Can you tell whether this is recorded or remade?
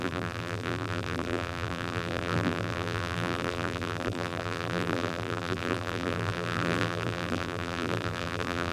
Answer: remade